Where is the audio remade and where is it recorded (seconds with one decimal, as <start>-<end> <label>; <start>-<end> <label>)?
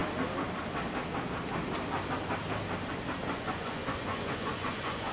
0.0-3.1 recorded; 3.1-5.1 remade